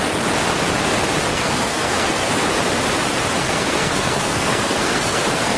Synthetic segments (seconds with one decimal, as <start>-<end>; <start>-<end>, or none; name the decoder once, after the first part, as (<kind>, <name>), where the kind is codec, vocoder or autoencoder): 1.3-2.3 (codec, SNAC); 3.4-5.6